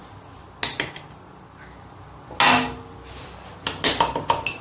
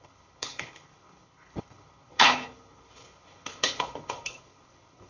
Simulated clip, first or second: second